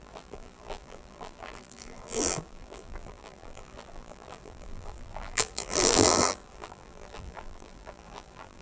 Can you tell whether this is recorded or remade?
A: remade